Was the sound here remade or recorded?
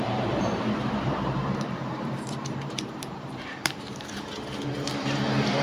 remade